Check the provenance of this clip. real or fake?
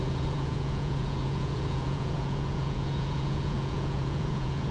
fake